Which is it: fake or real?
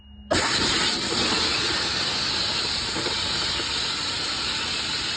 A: real